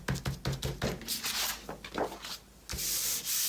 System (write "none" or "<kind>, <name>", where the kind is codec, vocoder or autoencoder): none